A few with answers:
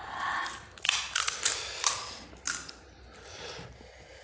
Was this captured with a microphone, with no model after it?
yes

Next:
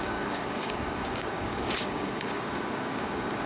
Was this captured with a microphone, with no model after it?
no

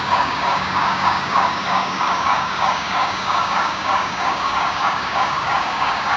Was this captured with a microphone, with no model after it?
no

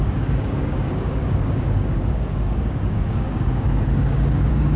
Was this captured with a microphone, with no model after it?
no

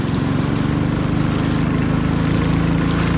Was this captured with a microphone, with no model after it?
yes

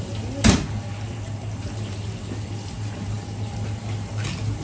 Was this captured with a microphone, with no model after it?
yes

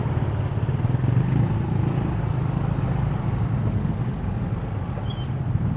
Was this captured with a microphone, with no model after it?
yes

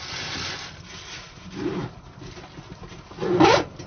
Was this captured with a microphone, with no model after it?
yes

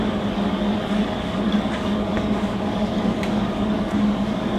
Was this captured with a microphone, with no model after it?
no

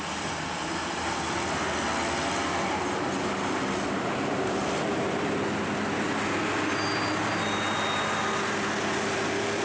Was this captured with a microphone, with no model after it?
yes